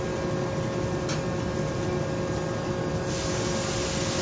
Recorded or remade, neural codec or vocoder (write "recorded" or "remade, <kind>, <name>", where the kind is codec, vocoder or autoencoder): recorded